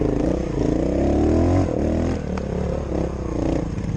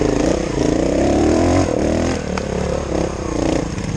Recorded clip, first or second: first